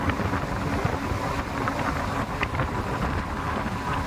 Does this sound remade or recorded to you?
recorded